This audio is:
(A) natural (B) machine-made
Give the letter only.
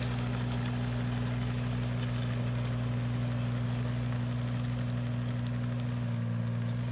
A